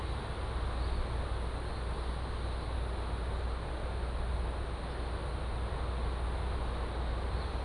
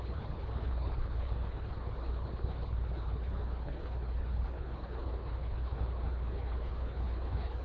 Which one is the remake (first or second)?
second